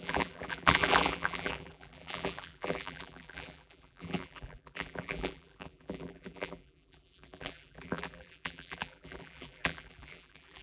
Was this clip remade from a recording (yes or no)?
yes